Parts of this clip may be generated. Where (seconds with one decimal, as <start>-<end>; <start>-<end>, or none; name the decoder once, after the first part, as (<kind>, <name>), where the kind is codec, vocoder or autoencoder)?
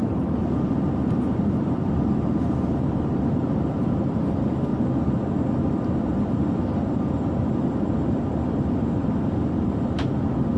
0.0-4.7 (vocoder, BigVGAN v2); 6.0-10.6